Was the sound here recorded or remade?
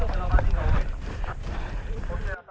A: recorded